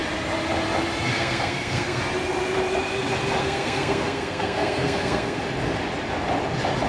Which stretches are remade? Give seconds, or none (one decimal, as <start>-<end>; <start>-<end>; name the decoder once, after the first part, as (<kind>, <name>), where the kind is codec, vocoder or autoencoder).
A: 1.1-2.0 (codec, SNAC); 3.4-5.4